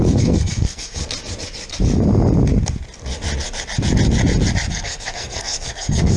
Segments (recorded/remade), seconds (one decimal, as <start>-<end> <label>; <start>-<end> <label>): 0.0-1.0 remade; 1.0-4.7 recorded; 4.7-6.2 remade